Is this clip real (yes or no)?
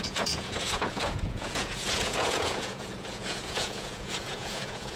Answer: no